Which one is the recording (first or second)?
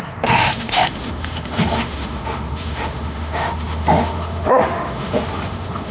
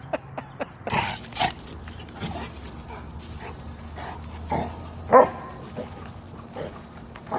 second